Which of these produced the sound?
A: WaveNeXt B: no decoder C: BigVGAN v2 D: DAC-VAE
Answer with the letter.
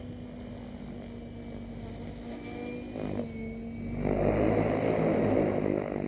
B